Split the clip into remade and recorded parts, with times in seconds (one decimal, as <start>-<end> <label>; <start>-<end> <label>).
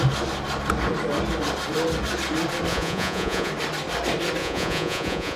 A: 0.0-2.7 recorded; 2.7-3.5 remade; 3.5-4.4 recorded; 4.4-5.4 remade